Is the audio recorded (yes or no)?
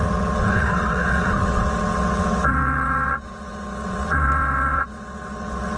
no